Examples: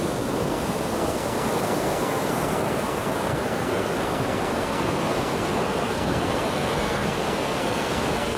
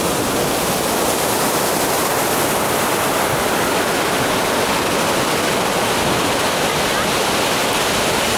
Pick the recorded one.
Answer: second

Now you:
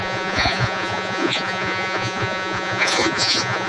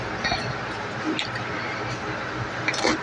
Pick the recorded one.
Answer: second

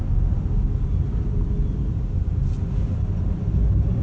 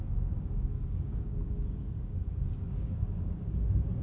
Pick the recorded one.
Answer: first